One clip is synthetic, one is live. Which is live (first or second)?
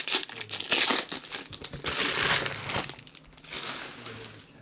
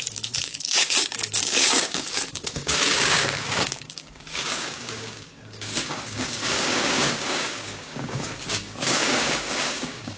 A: first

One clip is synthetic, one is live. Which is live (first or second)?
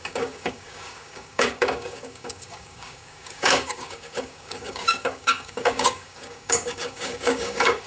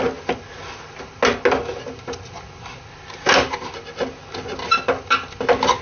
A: second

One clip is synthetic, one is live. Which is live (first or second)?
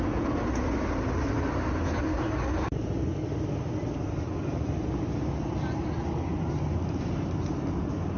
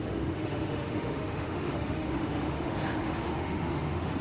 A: first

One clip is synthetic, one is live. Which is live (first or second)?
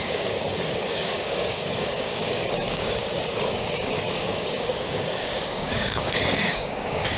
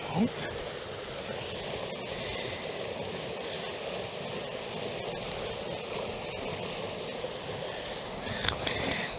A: second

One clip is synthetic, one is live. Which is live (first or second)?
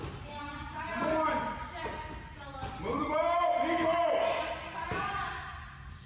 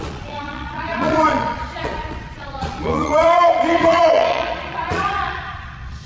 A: first